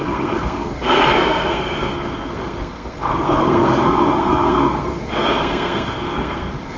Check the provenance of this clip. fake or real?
fake